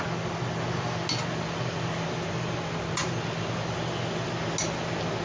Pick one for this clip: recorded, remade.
recorded